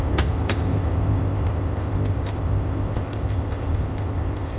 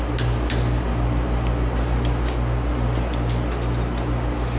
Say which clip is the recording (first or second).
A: second